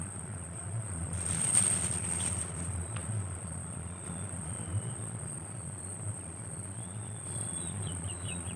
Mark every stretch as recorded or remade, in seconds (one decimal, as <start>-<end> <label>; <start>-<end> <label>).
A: 0.0-8.6 remade